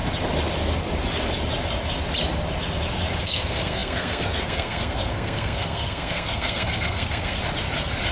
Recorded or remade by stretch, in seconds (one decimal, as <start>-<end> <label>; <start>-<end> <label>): 0.0-3.2 recorded; 3.2-7.4 remade; 7.4-8.1 recorded